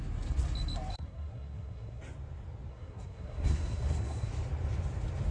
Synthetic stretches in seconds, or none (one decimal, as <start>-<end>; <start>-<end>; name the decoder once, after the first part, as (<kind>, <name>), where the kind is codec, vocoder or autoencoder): 0.9-2.0 (codec, SNAC); 2.7-4.3